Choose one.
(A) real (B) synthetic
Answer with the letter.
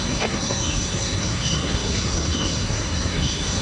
B